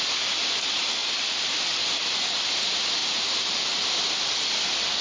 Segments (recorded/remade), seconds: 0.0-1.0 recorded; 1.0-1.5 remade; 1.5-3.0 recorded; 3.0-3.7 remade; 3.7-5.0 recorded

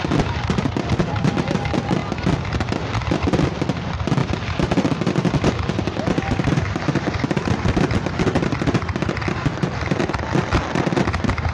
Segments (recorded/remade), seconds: 0.0-11.5 recorded

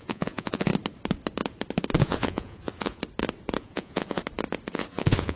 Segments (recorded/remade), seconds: 0.0-0.7 remade; 0.7-2.0 recorded; 2.0-3.0 remade; 3.0-3.6 recorded; 3.6-4.2 remade; 4.2-4.7 recorded; 4.7-5.3 remade

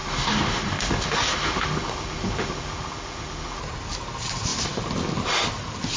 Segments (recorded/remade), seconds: 0.0-3.6 remade; 3.6-6.0 recorded

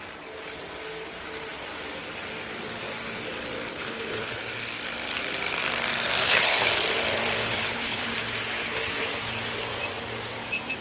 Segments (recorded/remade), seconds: 0.0-3.7 recorded; 3.7-4.4 remade; 4.4-6.2 recorded; 6.2-6.7 remade; 6.7-7.4 recorded; 7.4-8.1 remade; 8.1-10.8 recorded